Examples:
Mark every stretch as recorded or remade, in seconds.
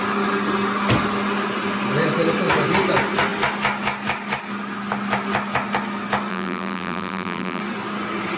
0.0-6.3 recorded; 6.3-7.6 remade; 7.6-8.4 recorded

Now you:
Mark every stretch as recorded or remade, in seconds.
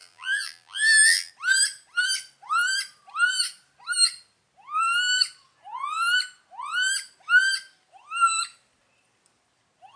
0.0-1.3 remade; 1.3-10.0 recorded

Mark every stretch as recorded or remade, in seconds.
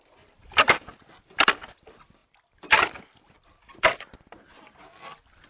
0.0-5.5 remade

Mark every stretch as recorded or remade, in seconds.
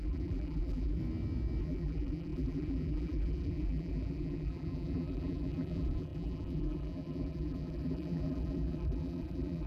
0.0-1.0 remade; 1.0-1.6 recorded; 1.6-9.7 remade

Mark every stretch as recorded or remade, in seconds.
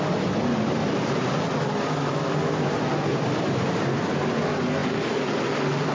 0.0-0.8 recorded; 0.8-1.4 remade; 1.4-3.1 recorded; 3.1-4.1 remade; 4.1-5.9 recorded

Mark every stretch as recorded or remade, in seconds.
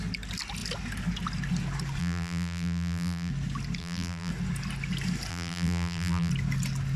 0.0-2.0 recorded; 2.0-3.3 remade; 3.3-3.8 recorded; 3.8-4.3 remade; 4.3-5.3 recorded; 5.3-6.3 remade; 6.3-7.0 recorded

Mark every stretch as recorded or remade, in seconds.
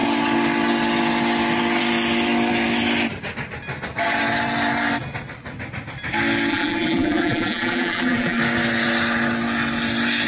0.0-6.5 recorded; 6.5-8.4 remade; 8.4-10.3 recorded